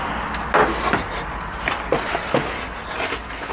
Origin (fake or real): real